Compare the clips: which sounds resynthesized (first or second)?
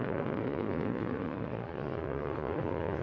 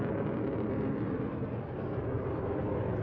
first